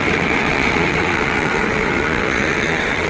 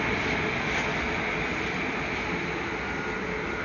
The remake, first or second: first